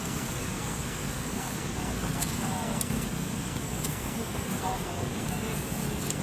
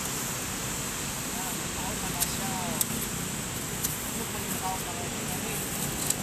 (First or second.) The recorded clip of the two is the second